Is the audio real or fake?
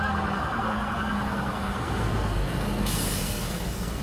fake